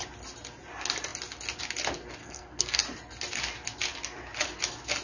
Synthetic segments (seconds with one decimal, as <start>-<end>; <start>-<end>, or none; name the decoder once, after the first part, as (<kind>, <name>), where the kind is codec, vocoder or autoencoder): 2.2-2.8 (codec, SNAC)